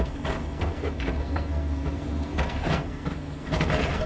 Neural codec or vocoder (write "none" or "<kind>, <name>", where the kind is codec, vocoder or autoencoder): codec, SNAC